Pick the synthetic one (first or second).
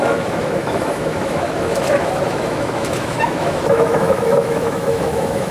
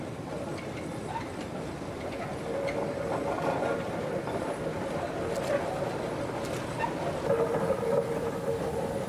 first